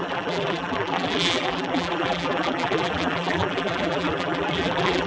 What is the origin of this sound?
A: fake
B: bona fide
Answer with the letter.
A